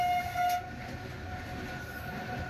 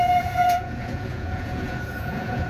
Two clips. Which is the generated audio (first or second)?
second